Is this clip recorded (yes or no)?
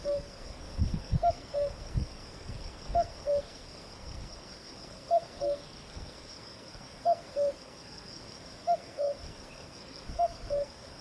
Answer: no